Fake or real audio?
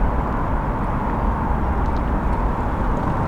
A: real